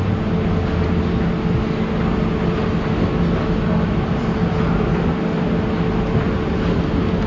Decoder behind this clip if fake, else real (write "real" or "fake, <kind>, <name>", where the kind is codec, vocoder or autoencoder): real